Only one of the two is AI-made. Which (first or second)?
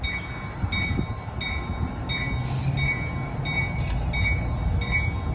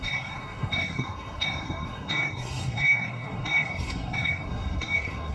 second